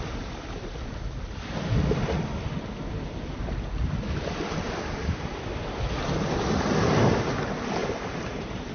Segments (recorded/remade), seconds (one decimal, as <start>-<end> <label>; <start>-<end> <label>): 0.0-7.8 recorded; 7.8-8.7 remade